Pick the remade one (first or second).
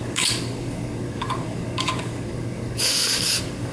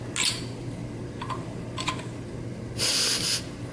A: first